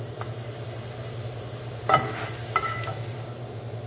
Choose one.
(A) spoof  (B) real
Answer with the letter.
B